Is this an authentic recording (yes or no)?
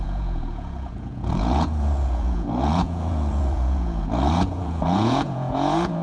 no